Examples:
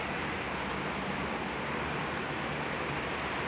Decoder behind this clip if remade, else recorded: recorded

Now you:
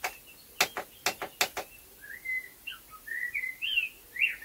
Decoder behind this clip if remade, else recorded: recorded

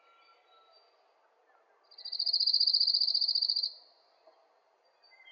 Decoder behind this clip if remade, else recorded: remade, vocoder, BigVGAN v2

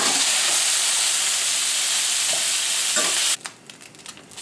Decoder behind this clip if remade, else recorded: recorded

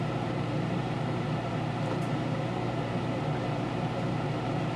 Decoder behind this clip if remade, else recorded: remade, vocoder, BigVGAN v2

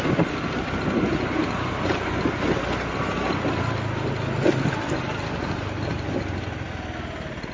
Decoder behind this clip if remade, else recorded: recorded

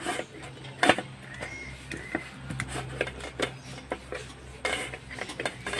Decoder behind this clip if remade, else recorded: recorded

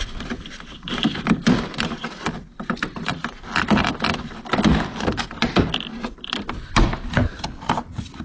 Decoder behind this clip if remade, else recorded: remade, vocoder, BigVGAN v2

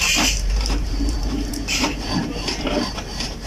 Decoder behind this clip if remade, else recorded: remade, vocoder, BigVGAN v2